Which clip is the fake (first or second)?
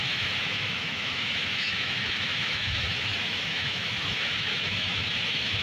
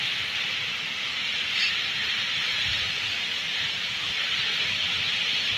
first